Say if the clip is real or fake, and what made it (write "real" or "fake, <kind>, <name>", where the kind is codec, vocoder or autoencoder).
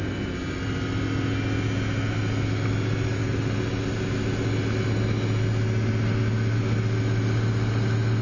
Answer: real